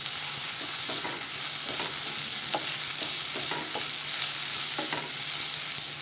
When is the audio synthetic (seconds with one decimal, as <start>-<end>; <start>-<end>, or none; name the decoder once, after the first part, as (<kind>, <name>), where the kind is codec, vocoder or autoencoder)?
0.4-1.3 (vocoder, Vocos)